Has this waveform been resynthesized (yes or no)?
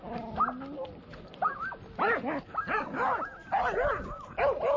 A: no